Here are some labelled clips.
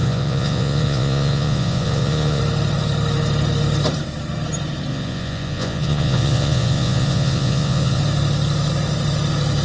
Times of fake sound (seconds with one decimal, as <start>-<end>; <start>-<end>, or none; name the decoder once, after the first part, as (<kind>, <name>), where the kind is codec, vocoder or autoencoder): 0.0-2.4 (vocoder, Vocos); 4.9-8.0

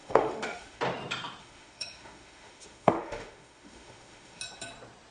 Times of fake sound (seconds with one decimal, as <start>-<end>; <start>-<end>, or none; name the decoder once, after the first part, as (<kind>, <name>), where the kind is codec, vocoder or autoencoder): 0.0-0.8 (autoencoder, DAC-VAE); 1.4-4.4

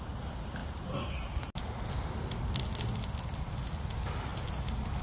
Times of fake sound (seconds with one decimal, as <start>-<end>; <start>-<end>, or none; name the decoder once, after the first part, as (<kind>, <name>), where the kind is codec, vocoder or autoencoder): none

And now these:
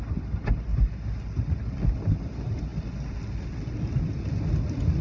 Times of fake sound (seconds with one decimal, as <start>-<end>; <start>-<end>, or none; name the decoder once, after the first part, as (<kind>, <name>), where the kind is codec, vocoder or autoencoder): none

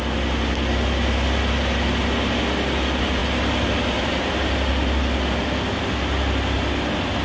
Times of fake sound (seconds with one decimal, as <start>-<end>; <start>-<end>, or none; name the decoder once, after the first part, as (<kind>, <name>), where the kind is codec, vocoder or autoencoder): none